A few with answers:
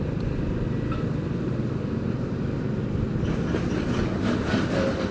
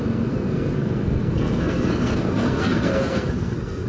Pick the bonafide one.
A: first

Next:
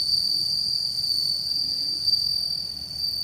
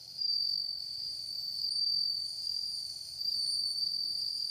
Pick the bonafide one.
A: first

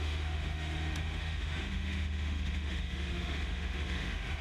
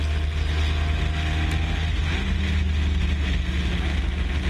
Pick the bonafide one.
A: second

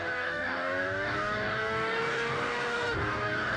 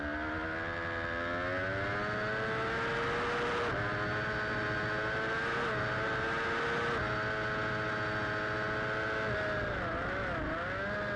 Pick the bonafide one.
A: second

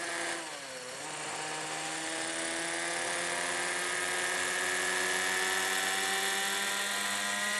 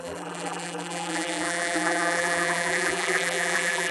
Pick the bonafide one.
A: first